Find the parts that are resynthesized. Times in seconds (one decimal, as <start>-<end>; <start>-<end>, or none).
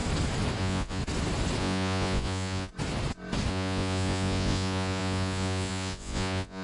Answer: 0.6-1.0; 1.6-2.7; 3.5-6.6